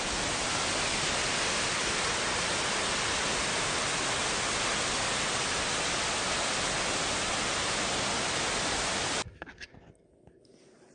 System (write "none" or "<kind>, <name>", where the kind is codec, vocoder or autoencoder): none